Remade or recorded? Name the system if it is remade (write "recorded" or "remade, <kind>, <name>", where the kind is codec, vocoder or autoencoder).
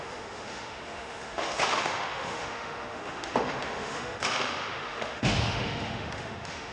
remade, autoencoder, DAC-VAE